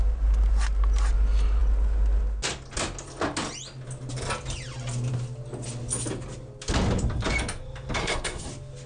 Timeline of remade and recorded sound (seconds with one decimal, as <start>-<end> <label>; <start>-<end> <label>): 0.0-8.0 recorded; 8.0-8.5 remade; 8.5-8.9 recorded